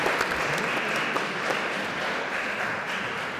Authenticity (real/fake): fake